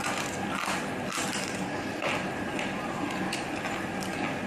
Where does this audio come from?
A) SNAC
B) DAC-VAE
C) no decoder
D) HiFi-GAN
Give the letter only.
C